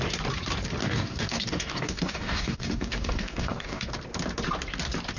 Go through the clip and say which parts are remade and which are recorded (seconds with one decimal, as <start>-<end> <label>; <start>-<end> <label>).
0.0-0.8 recorded; 0.8-3.9 remade; 3.9-5.2 recorded